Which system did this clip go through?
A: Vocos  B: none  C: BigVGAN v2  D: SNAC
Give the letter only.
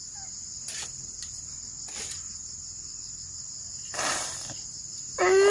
B